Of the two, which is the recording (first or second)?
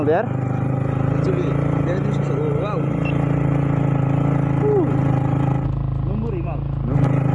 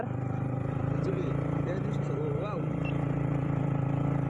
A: first